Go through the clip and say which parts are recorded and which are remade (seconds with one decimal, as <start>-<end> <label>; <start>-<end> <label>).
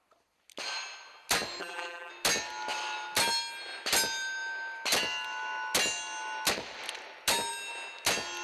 0.0-1.6 recorded; 1.6-2.1 remade; 2.1-8.4 recorded